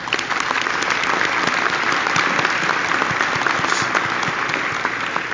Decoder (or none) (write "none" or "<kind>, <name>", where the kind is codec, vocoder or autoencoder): none